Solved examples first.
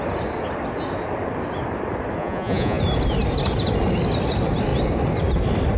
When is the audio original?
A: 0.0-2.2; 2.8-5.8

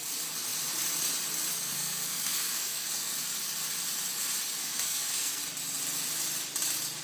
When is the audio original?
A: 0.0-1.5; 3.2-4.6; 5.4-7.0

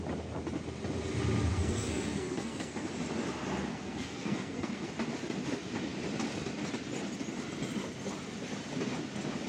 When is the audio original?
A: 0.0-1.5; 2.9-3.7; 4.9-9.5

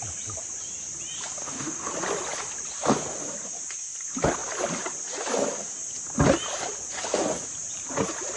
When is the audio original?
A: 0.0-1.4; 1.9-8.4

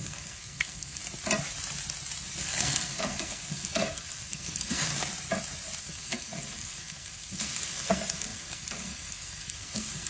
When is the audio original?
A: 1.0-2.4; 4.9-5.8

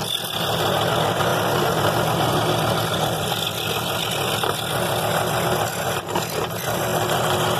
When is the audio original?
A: 0.0-6.9